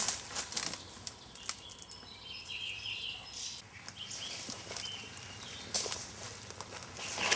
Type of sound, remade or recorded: recorded